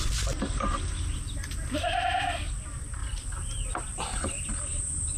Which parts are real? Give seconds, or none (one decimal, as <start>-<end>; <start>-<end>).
0.0-5.2